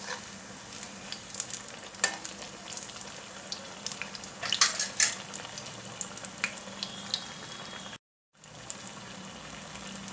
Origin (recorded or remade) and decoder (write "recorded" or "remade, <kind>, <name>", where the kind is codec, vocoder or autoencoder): recorded